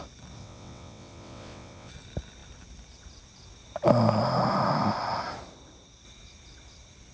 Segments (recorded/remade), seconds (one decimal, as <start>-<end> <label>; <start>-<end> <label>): 0.0-0.4 recorded; 0.4-1.9 remade; 1.9-7.1 recorded